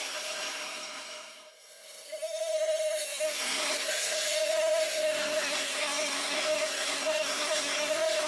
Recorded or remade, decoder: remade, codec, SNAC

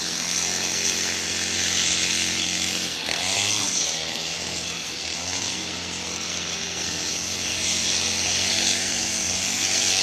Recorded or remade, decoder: remade, codec, SNAC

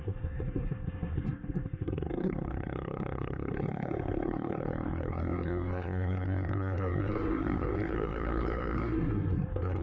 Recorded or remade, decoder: remade, codec, SNAC